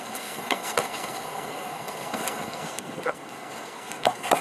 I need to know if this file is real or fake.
fake